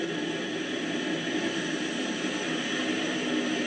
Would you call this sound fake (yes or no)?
no